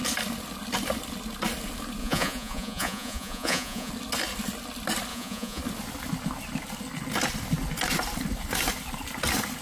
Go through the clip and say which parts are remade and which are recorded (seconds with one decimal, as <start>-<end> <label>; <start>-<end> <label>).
0.0-2.0 recorded; 2.0-3.9 remade; 3.9-5.1 recorded; 5.1-5.6 remade; 5.6-9.6 recorded